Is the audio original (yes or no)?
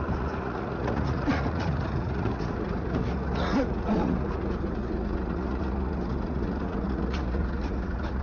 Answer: no